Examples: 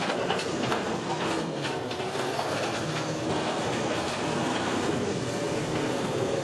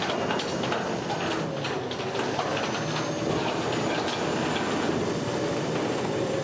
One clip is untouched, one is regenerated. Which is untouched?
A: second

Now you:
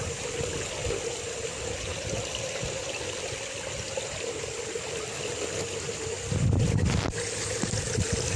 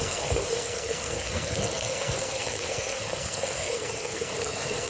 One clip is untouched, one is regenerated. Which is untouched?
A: first